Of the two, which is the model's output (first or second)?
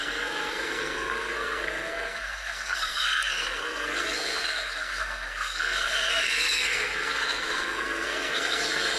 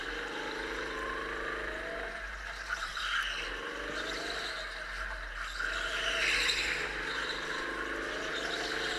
first